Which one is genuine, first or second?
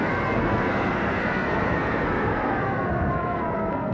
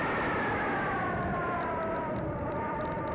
second